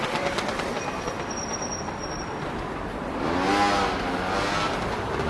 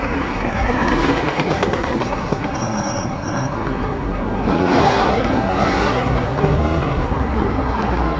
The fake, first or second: second